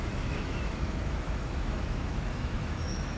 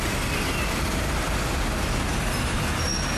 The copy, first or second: first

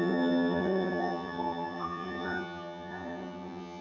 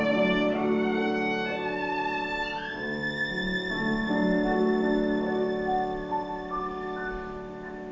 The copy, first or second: first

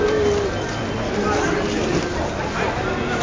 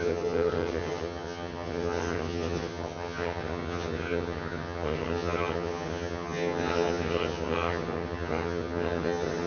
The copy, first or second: second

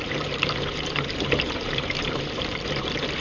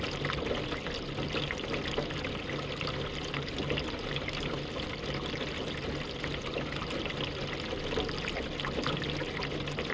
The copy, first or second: first